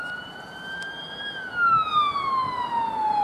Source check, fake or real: real